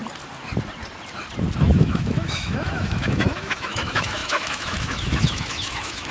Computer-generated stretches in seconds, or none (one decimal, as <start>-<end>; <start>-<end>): 1.6-6.1